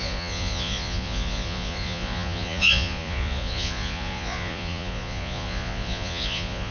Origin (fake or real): fake